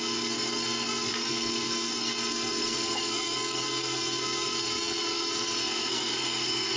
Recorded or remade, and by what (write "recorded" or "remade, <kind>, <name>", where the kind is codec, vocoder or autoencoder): remade, codec, SNAC